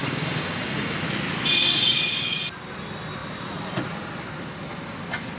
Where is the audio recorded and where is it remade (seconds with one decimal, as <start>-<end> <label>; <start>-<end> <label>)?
0.0-1.1 remade; 1.1-1.6 recorded; 1.6-2.4 remade; 2.4-5.4 recorded

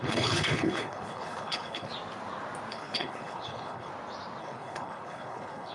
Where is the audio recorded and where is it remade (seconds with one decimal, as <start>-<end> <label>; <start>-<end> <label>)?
0.0-1.9 remade; 1.9-2.7 recorded; 2.7-3.9 remade; 3.9-4.4 recorded; 4.4-5.7 remade

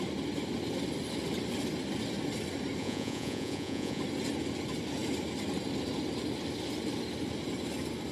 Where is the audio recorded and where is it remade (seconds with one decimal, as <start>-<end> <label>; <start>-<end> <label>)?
0.0-2.8 recorded; 2.8-4.0 remade; 4.0-8.1 recorded

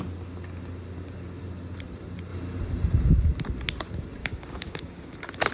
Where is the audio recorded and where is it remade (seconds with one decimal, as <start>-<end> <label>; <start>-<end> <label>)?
0.0-4.2 recorded; 4.2-5.1 remade; 5.1-5.5 recorded